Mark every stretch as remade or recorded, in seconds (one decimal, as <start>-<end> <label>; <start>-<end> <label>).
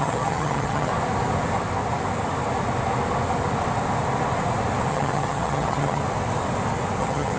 0.0-0.9 remade; 0.9-4.9 recorded; 4.9-6.0 remade; 6.0-7.0 recorded; 7.0-7.4 remade